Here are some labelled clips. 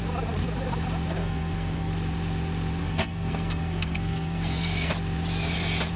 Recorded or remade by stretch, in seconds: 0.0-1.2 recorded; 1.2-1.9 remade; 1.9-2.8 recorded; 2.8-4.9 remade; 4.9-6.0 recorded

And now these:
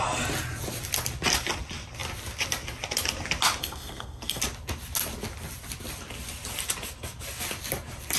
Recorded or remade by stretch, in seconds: 0.0-3.6 recorded; 3.6-4.4 remade; 4.4-8.2 recorded

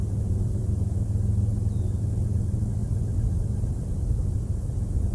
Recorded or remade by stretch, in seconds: 0.0-0.7 remade; 0.7-5.1 recorded

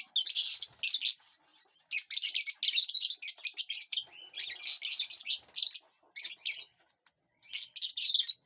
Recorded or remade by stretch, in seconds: 0.0-8.5 recorded

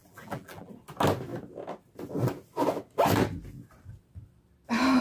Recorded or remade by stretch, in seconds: 0.0-0.7 remade; 0.7-5.0 recorded